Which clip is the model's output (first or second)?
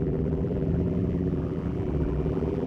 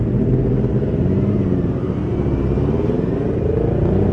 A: first